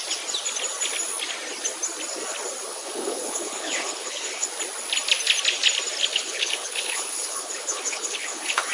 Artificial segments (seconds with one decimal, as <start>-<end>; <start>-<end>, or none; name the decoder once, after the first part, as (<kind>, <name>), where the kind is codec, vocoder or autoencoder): 2.7-4.5 (codec, HILCodec); 6.1-8.7